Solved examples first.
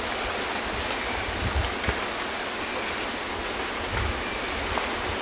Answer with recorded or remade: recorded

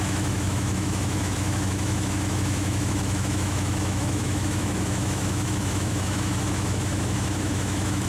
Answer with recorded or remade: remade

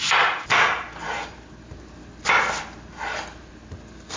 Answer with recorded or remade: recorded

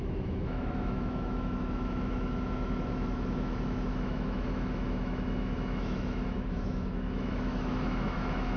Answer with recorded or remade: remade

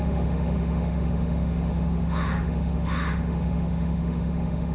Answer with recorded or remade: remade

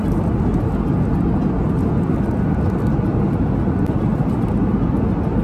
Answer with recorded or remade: recorded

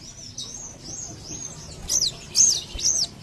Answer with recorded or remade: recorded